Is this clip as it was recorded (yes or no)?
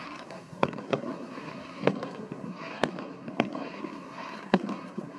no